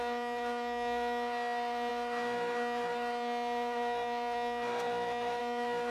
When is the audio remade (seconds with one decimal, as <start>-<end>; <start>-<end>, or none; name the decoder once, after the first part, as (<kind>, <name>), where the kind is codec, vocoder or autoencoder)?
0.0-5.9 (autoencoder, DAC-VAE)